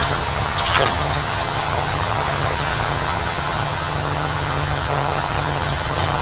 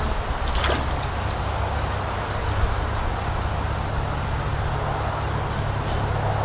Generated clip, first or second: first